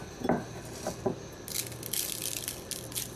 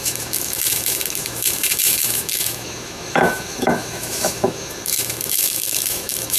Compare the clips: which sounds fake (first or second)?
second